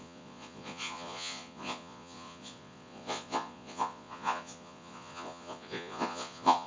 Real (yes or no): no